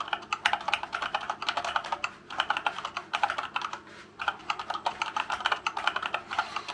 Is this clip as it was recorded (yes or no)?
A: yes